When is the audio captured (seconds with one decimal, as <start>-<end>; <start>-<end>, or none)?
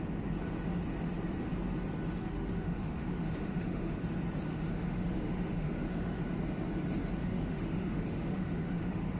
0.0-2.2; 4.0-4.5; 6.2-7.2